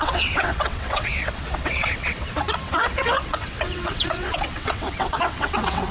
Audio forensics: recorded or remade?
remade